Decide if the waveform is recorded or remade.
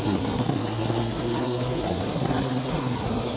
remade